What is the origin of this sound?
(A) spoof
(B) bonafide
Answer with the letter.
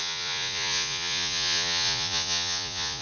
A